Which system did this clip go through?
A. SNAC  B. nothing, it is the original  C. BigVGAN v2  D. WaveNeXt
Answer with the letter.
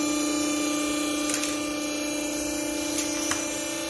B